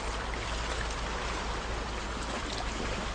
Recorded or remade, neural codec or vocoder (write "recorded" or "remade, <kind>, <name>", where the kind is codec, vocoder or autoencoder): recorded